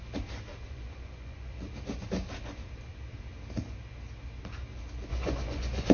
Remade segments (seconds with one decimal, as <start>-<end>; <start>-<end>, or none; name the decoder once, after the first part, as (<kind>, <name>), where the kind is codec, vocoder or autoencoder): 0.5-1.5 (vocoder, Vocos); 5.1-5.9